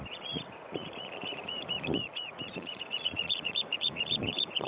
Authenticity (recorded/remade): remade